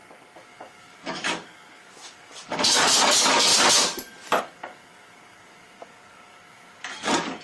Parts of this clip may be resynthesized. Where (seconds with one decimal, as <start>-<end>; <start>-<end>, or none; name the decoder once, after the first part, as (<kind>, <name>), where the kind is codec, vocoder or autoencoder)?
0.0-3.5 (codec, DAC); 4.4-7.4